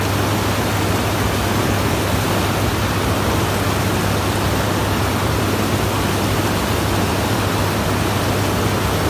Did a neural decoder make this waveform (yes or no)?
no